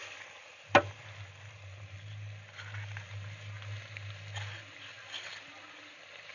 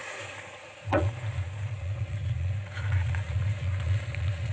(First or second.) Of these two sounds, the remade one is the second